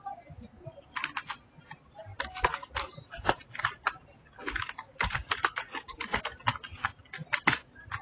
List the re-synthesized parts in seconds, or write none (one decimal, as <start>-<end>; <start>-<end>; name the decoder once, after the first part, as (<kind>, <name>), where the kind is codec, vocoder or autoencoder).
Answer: none

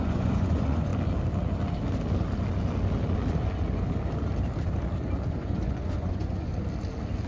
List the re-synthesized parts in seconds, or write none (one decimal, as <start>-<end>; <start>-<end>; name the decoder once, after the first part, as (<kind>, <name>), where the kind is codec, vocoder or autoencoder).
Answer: 0.0-0.9 (vocoder, Vocos); 5.3-6.5

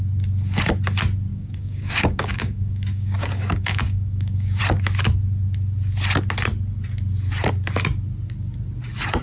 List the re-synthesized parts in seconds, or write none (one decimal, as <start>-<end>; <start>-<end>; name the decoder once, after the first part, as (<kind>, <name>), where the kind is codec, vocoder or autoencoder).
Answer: 1.3-4.6 (codec, DAC)

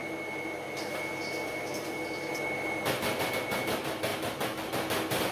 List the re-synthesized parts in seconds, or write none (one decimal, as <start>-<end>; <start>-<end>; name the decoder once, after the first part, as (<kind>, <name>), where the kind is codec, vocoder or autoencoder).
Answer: none

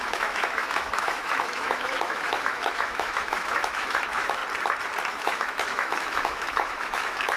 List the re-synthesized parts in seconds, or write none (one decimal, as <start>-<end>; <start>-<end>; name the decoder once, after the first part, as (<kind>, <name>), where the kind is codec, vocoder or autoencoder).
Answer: 0.0-4.4 (autoencoder, DAC-VAE); 5.1-7.4

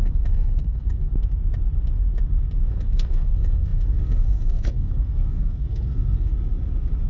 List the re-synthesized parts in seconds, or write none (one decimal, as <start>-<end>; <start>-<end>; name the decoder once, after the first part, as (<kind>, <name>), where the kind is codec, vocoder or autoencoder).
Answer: 0.0-1.1 (codec, SNAC); 2.7-6.3